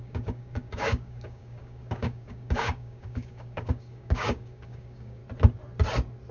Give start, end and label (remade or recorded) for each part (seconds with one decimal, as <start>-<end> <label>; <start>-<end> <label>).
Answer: 0.0-5.2 remade; 5.2-6.3 recorded